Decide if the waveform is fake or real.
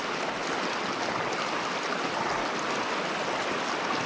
real